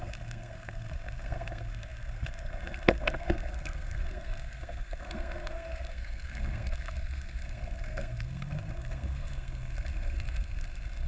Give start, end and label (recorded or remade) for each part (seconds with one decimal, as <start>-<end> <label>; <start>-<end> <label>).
0.0-11.1 remade